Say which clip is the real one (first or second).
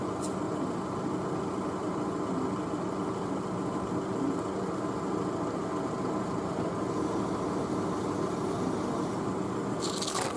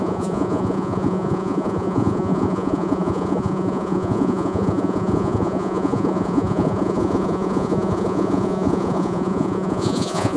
first